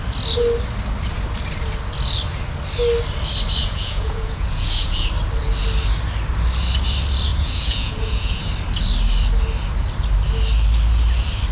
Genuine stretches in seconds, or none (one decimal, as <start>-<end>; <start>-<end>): 0.0-3.6; 5.1-7.3; 8.4-11.5